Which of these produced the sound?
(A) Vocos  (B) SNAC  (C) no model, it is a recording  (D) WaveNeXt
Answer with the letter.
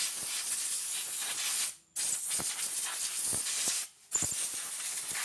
C